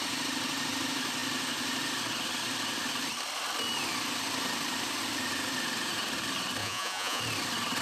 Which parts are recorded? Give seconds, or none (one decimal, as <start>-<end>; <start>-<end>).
0.0-6.6; 7.2-7.8